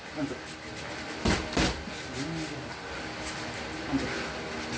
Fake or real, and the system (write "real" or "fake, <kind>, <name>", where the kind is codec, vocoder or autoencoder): real